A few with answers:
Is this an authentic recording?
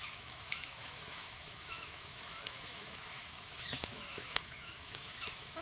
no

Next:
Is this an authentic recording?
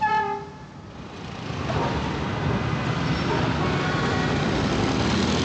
yes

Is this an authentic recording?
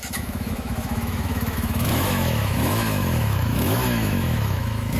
no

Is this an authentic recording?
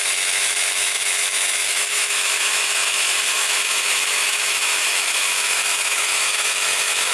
no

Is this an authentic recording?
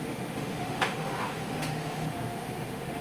no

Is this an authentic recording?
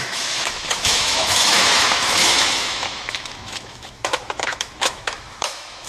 no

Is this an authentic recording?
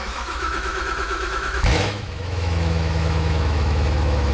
no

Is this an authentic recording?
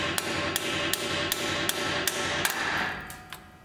yes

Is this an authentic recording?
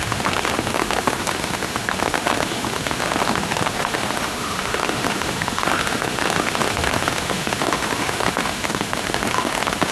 no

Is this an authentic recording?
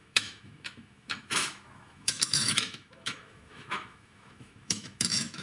no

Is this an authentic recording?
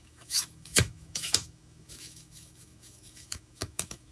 no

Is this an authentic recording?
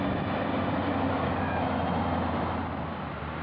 yes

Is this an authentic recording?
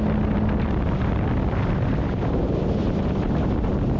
yes